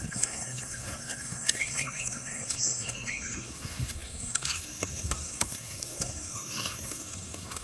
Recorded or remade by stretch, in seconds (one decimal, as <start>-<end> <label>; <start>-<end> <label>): 0.0-7.6 remade

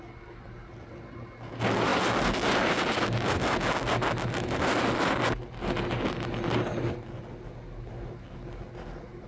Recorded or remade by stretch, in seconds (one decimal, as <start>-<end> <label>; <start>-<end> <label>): 0.0-9.3 recorded

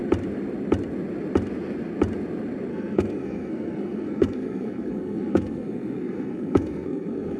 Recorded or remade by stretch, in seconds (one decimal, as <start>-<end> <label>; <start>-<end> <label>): 0.0-2.7 recorded; 2.7-7.4 remade

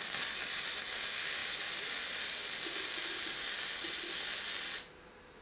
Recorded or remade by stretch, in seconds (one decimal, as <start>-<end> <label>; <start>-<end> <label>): 0.0-5.4 recorded

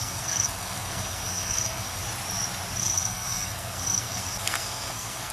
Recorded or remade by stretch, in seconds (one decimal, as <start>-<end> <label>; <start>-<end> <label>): 0.0-2.0 remade; 2.0-2.8 recorded; 2.8-5.3 remade

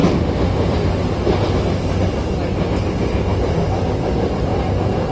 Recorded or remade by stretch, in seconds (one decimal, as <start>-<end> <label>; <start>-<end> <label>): 0.0-5.1 recorded